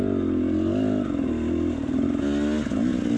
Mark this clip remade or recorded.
recorded